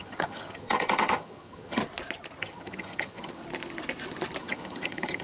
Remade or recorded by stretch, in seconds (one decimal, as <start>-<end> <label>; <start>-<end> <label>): 0.0-1.8 remade; 1.8-2.4 recorded; 2.4-3.4 remade; 3.4-4.4 recorded; 4.4-5.2 remade